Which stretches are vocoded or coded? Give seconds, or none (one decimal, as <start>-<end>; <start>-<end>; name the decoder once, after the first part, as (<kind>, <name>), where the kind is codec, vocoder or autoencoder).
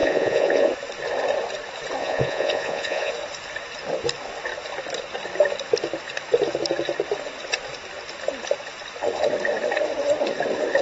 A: 0.0-0.7 (vocoder, Vocos); 2.0-3.1